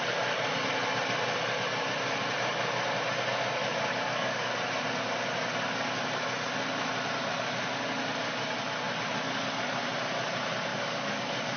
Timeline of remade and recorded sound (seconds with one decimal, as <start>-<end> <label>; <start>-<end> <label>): 0.0-3.6 recorded; 3.6-4.5 remade; 4.5-10.7 recorded; 10.7-11.6 remade